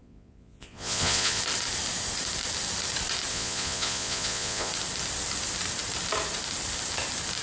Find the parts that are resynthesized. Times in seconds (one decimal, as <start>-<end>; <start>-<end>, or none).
0.0-1.4; 3.3-4.7